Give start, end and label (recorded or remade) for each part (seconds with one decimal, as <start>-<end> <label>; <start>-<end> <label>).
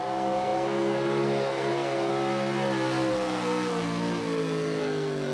0.0-2.1 remade; 2.1-3.1 recorded; 3.1-5.3 remade